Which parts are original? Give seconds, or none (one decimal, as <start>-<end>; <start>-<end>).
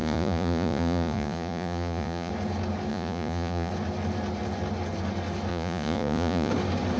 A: 2.3-2.9; 3.7-5.5; 6.5-7.0